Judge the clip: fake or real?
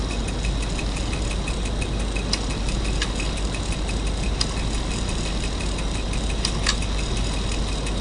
real